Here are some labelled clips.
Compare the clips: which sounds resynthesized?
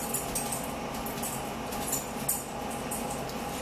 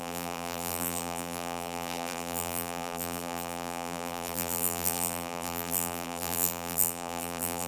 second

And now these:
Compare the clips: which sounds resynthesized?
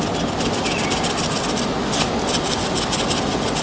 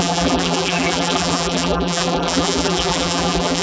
second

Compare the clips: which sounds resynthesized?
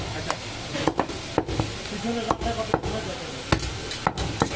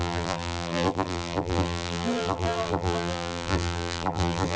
second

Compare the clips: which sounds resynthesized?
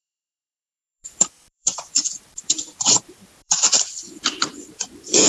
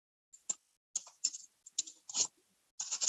first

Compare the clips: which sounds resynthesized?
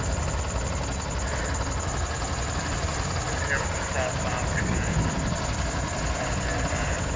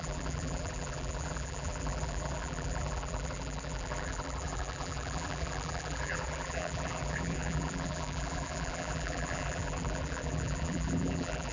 second